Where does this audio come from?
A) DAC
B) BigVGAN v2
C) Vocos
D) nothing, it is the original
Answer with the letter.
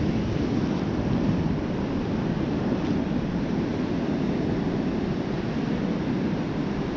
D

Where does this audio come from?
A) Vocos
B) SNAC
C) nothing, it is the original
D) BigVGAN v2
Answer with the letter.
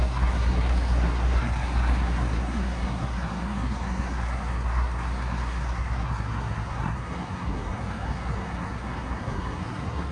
B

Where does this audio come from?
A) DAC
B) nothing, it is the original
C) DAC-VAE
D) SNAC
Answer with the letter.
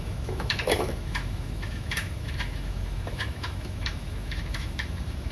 C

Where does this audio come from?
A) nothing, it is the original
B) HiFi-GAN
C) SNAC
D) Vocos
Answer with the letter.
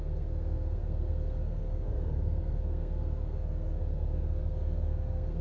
C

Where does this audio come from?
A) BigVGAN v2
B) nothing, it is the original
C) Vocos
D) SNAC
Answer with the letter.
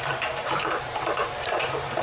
A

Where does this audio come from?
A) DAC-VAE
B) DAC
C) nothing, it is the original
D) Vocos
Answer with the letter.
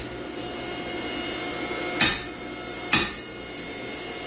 C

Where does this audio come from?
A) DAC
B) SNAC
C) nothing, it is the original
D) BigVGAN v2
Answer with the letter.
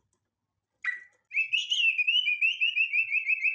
C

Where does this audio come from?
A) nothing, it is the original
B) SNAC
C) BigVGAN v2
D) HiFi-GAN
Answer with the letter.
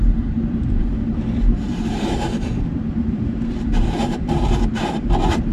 C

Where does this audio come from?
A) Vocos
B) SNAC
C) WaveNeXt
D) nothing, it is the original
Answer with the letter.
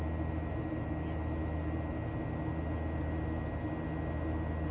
D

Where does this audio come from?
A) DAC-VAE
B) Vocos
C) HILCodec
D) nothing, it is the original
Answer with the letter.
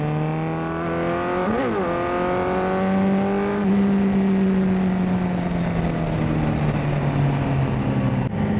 D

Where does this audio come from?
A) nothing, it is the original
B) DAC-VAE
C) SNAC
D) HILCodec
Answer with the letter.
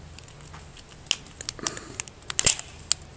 A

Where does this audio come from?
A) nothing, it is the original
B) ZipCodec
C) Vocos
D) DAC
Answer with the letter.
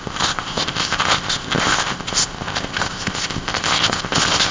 B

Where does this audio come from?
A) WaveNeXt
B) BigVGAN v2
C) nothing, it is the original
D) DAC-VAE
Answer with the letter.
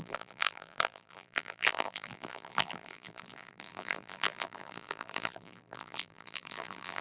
B